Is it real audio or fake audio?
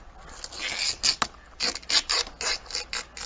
real